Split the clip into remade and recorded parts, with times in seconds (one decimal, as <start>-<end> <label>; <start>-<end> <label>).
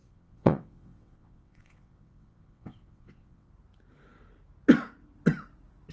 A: 0.0-3.5 remade; 3.5-5.9 recorded